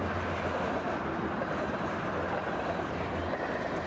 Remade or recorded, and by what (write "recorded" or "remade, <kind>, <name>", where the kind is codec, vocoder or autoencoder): recorded